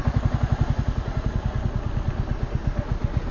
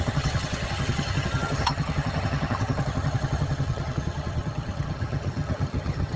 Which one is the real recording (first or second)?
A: first